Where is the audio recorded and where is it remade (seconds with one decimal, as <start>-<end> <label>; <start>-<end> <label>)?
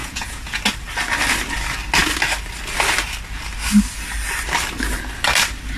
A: 0.0-0.6 remade; 0.6-5.8 recorded